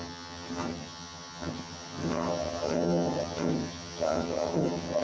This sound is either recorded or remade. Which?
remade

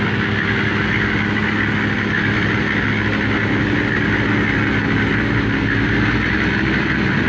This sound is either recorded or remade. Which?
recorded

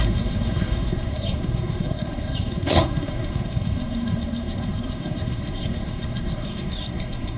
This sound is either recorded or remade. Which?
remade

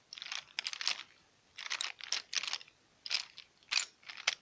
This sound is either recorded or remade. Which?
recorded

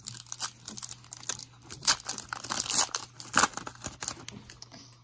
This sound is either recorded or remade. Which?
recorded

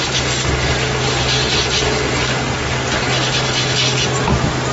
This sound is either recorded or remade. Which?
recorded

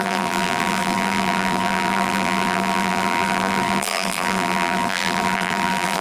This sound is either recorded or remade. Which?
remade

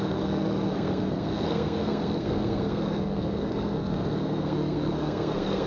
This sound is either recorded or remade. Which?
remade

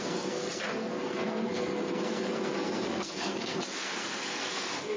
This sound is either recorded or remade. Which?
remade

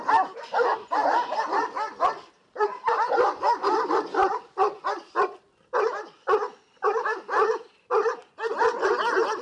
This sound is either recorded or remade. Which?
recorded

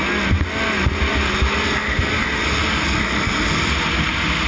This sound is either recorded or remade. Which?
recorded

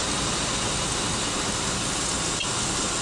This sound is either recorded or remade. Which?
recorded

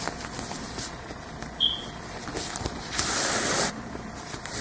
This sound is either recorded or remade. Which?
recorded